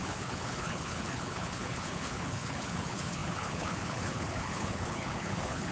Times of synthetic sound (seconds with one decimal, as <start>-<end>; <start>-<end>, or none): 0.0-5.7